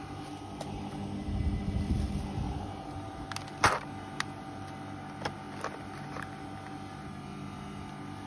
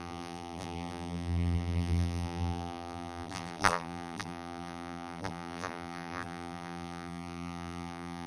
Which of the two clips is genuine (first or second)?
first